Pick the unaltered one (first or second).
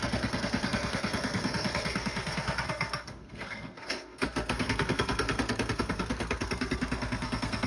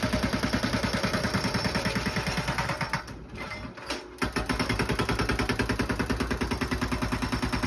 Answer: second